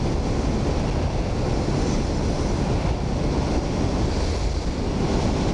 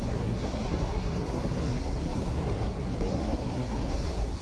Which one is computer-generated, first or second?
second